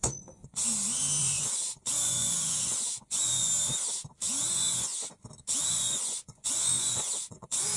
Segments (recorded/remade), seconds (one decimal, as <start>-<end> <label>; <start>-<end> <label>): 0.0-0.6 remade; 0.6-1.2 recorded; 1.2-3.5 remade; 3.5-4.4 recorded; 4.4-4.9 remade; 4.9-5.7 recorded; 5.7-7.8 remade